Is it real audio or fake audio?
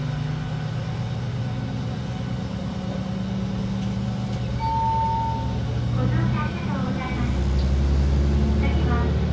real